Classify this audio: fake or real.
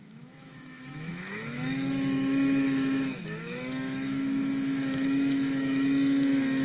fake